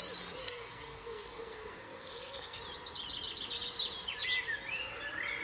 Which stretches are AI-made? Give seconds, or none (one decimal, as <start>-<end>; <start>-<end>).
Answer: 0.4-2.6

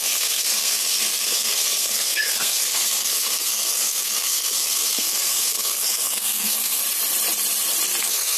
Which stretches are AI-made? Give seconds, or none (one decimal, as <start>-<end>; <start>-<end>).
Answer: 0.0-6.8; 8.0-8.4